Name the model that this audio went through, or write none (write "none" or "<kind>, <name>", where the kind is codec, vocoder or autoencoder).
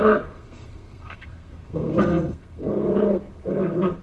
codec, SNAC